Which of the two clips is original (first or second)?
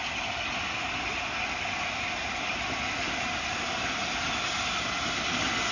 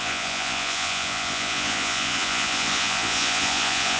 first